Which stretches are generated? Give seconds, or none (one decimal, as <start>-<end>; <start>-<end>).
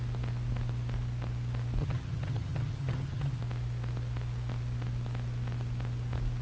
1.8-3.4